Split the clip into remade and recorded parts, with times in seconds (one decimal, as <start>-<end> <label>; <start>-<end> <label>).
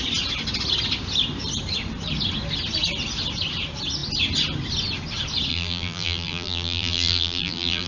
0.0-5.5 recorded; 5.5-7.9 remade